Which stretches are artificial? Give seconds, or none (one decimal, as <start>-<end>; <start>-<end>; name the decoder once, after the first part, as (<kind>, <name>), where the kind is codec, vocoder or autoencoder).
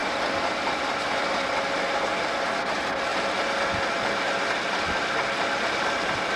none